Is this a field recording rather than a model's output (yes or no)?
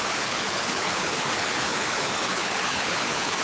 no